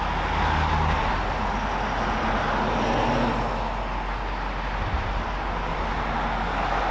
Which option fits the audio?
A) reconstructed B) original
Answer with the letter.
B